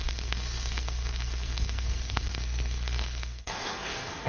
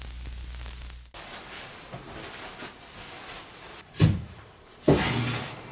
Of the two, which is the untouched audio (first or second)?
second